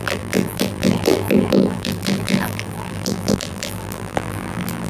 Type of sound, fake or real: fake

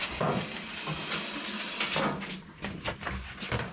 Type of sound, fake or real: real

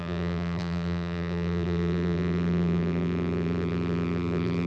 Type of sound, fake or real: fake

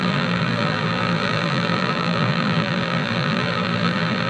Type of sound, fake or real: fake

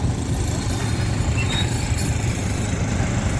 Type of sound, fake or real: real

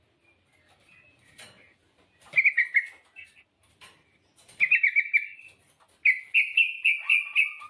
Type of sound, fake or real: real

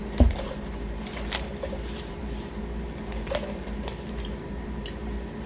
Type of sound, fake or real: fake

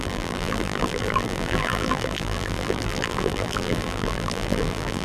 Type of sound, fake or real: fake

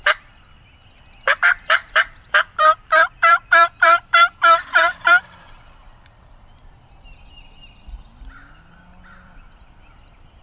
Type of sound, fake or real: fake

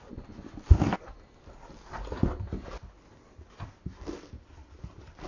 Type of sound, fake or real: real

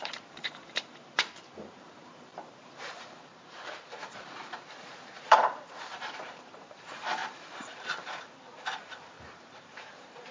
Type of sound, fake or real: fake